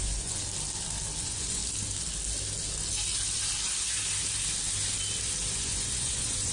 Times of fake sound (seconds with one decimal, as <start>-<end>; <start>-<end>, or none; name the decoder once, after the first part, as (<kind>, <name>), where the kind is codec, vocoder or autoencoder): 0.0-0.4 (vocoder, Vocos); 1.2-1.6; 5.5-6.5